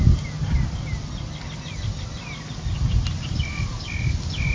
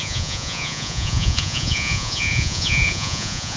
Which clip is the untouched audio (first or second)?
first